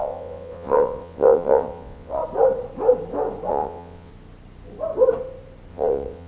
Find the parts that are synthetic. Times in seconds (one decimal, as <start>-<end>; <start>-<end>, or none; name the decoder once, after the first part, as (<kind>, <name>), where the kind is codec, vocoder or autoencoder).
0.0-2.2 (vocoder, WaveNeXt); 3.5-4.1; 5.7-6.3